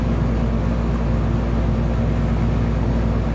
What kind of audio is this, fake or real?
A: real